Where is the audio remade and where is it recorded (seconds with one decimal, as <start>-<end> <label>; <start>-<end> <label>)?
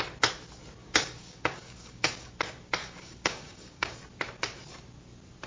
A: 0.0-0.8 recorded; 0.8-2.3 remade; 2.3-2.8 recorded; 2.8-3.9 remade; 3.9-5.5 recorded